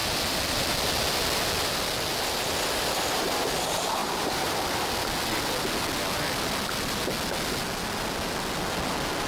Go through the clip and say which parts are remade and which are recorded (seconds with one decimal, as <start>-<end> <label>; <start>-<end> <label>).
0.0-4.0 recorded; 4.0-4.9 remade; 4.9-9.3 recorded